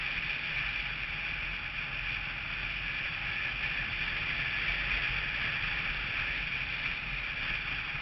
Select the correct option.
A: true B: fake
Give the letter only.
A